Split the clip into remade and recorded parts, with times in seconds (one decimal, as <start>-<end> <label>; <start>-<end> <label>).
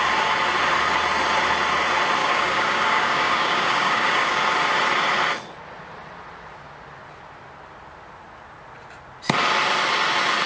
0.0-2.2 recorded; 2.2-4.4 remade; 4.4-10.5 recorded